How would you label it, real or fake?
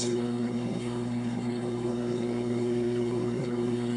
fake